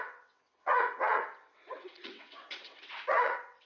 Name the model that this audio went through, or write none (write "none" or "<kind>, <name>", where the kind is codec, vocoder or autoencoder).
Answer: vocoder, WaveNeXt